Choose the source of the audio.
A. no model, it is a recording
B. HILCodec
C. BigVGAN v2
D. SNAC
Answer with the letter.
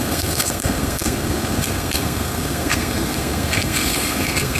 D